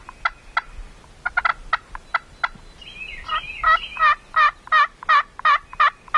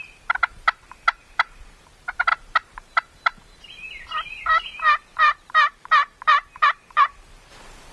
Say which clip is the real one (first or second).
first